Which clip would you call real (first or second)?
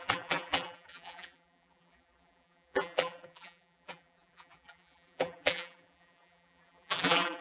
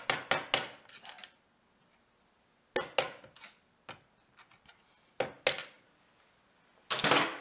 second